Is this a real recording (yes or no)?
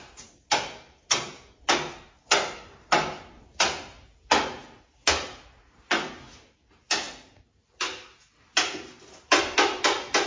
yes